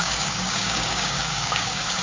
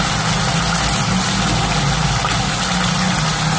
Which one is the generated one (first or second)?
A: first